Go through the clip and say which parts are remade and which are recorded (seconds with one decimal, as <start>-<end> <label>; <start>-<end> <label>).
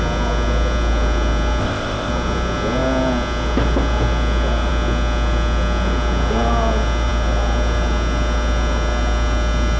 0.0-1.6 recorded; 1.6-2.1 remade; 2.1-9.8 recorded